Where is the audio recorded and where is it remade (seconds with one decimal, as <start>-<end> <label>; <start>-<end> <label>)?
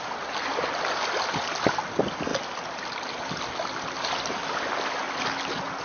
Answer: 0.0-5.8 recorded